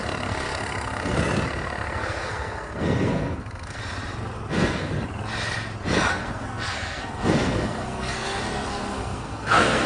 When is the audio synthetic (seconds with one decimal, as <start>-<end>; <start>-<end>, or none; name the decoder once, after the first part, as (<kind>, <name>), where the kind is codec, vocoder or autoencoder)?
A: 0.0-3.8 (codec, SNAC); 4.5-4.9; 6.1-9.9